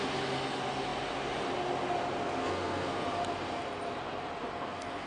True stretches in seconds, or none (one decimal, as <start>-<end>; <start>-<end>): 0.0-2.4; 3.1-4.4